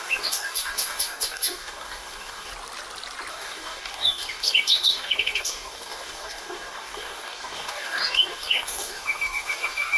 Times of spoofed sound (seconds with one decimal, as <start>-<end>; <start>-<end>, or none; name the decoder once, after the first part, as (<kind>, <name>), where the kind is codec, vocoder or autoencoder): 0.0-2.5 (codec, DAC); 3.3-10.0